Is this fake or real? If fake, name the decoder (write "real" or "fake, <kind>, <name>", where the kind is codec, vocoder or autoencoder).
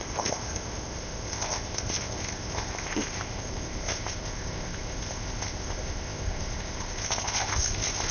fake, codec, ZipCodec